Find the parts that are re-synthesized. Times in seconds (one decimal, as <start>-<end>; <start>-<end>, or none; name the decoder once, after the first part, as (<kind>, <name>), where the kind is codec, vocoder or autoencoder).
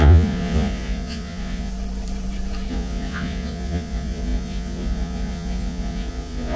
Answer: 0.0-1.7 (vocoder, Vocos); 2.7-6.6